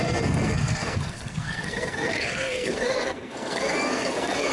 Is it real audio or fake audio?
fake